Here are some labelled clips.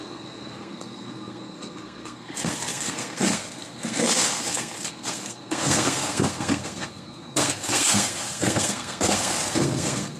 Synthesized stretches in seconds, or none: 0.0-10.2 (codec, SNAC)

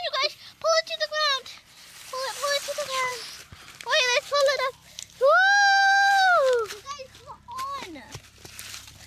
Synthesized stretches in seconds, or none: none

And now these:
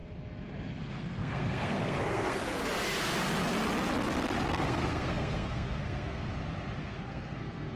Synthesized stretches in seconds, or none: 0.9-2.4 (codec, SNAC); 4.5-6.3; 6.8-7.8

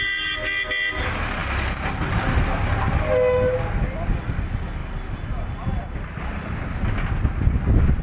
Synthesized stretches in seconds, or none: none